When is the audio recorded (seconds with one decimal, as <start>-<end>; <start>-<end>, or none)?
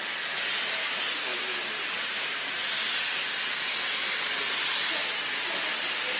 0.0-6.2